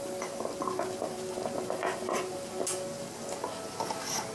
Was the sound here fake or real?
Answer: real